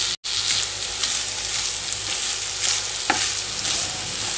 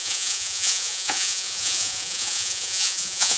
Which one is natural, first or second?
first